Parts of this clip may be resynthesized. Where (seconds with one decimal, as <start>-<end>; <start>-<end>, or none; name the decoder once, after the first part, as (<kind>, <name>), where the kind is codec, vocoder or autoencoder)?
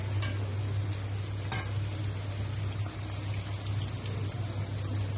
none